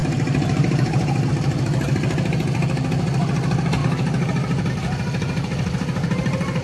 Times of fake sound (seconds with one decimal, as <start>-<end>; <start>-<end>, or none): 0.0-1.3